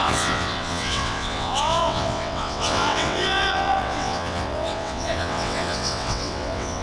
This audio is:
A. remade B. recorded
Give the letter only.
A